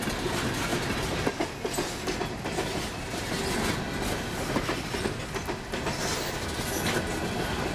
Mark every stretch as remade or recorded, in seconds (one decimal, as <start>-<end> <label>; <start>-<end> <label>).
0.0-7.7 recorded